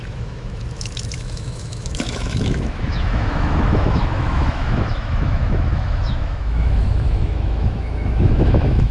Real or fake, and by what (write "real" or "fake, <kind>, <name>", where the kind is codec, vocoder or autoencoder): fake, autoencoder, DAC-VAE